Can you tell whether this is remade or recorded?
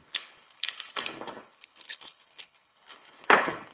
remade